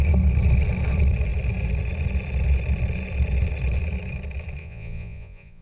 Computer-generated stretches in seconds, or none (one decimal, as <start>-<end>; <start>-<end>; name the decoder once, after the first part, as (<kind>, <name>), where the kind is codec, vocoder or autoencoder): 4.6-5.6 (vocoder, Vocos)